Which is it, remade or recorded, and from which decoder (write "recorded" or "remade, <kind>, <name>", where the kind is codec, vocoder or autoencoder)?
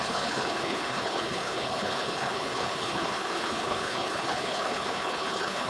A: remade, codec, HILCodec